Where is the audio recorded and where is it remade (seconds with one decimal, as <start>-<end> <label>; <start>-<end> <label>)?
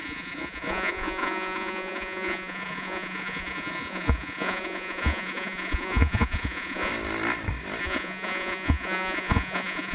0.0-6.9 remade; 6.9-7.8 recorded; 7.8-9.9 remade